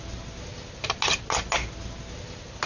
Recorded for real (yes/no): yes